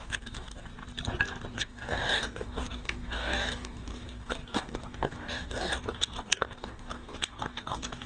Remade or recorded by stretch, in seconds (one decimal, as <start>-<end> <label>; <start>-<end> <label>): 0.0-0.7 remade; 0.7-1.5 recorded; 1.5-8.1 remade